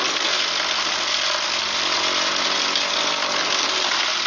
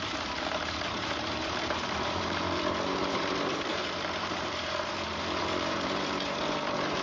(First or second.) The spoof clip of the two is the second